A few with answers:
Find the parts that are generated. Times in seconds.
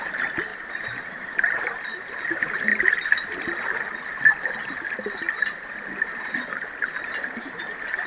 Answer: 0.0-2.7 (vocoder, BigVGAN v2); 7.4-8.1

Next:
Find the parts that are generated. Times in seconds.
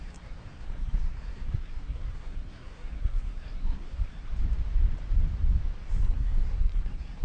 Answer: 0.0-4.3 (codec, SNAC); 6.0-7.2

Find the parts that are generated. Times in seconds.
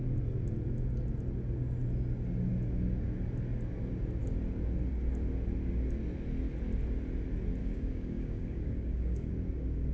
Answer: 7.6-9.3 (codec, DAC)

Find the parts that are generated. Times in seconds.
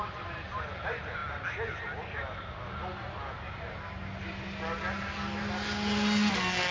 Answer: none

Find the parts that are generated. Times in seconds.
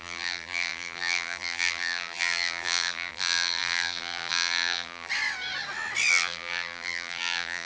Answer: 0.0-5.1 (vocoder, BigVGAN v2); 6.1-7.7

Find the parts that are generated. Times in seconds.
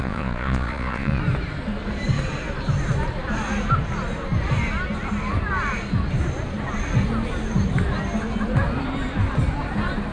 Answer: 0.0-1.2 (vocoder, Vocos)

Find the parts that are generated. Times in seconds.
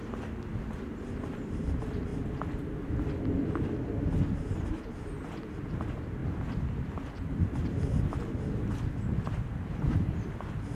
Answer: 0.8-2.1 (vocoder, BigVGAN v2); 4.4-6.2; 9.3-10.7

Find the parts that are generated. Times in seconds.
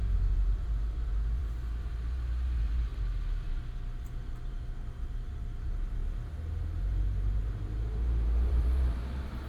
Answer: 0.0-2.9 (vocoder, BigVGAN v2); 4.0-6.0; 6.8-9.5